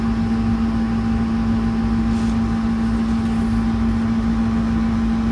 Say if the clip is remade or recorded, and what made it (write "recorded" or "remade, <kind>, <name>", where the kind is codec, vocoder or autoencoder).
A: recorded